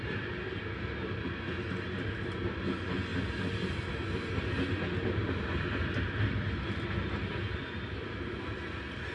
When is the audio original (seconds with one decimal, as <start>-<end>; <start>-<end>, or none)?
0.0-9.1